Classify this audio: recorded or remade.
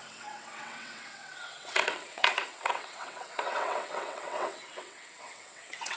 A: remade